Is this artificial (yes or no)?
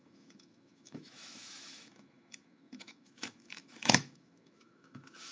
yes